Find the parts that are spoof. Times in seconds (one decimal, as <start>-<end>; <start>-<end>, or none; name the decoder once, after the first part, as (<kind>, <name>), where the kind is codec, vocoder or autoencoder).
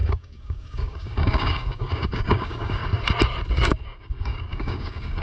0.0-2.8 (codec, DAC); 3.5-5.2